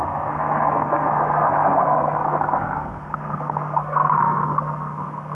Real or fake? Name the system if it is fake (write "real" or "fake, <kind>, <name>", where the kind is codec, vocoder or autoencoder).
fake, codec, SNAC